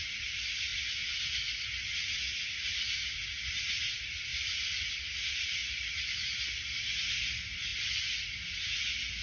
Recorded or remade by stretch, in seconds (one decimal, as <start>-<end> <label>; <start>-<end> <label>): 0.0-4.3 recorded; 4.3-4.9 remade; 4.9-9.2 recorded